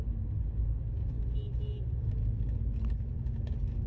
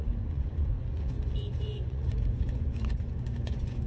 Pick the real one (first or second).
first